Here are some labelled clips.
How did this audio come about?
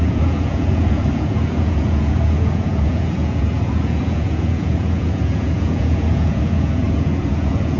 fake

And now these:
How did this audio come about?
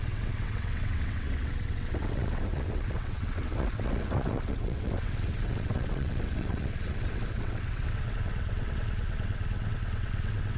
fake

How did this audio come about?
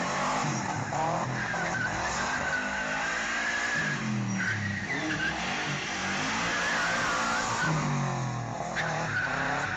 real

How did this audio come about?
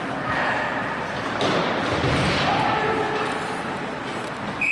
real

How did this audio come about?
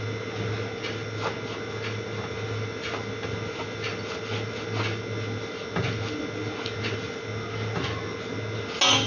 real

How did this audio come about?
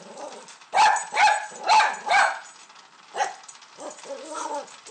real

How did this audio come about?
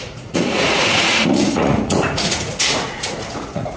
fake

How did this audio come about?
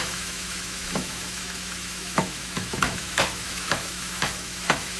fake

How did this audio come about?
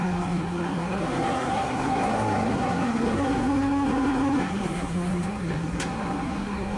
fake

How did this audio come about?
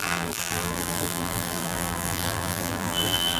fake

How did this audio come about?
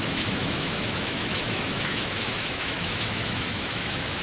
fake